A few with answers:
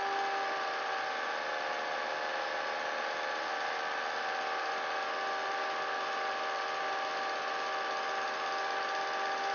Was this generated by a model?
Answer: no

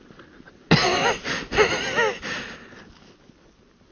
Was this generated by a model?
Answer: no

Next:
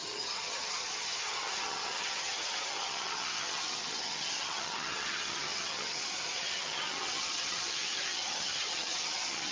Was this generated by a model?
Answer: yes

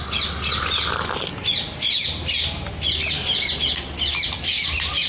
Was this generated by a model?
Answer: no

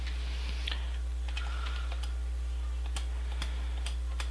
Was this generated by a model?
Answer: yes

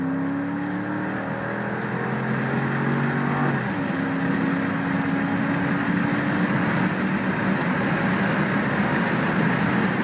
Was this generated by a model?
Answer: no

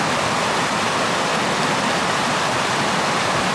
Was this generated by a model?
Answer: no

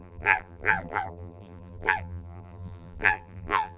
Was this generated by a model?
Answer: yes